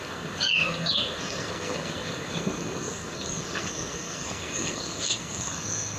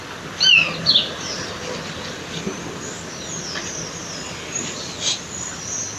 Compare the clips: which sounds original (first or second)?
second